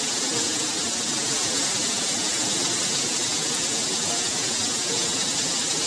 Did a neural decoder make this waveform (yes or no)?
no